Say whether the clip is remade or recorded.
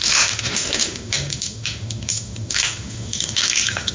remade